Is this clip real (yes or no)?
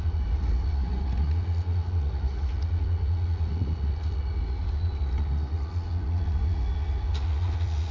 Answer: no